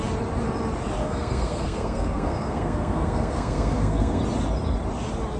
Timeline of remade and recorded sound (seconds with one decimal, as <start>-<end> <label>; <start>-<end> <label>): 0.0-1.0 recorded; 1.0-4.2 remade; 4.2-5.4 recorded